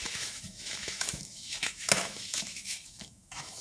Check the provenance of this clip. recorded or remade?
remade